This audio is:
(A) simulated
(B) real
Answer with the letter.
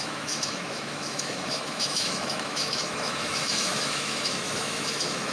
A